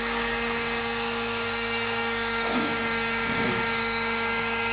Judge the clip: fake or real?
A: fake